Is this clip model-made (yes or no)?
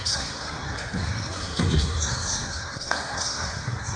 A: yes